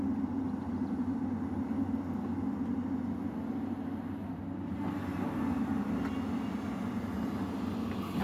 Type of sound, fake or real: real